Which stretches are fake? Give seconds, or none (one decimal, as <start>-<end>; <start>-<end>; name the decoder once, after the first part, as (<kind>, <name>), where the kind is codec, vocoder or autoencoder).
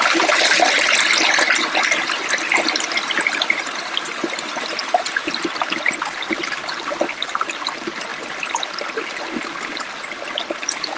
4.8-5.9 (vocoder, BigVGAN v2)